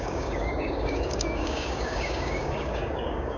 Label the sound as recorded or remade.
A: remade